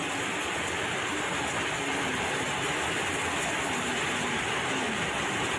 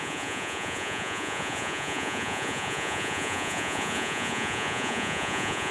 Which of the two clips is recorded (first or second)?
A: first